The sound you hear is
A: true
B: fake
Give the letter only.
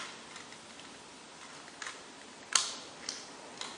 A